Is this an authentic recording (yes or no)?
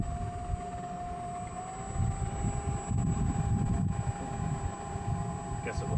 yes